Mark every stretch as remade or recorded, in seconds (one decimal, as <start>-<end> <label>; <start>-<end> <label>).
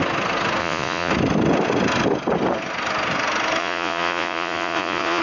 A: 0.0-0.6 recorded; 0.6-1.1 remade; 1.1-3.6 recorded; 3.6-5.2 remade